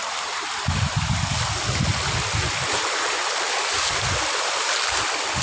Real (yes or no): yes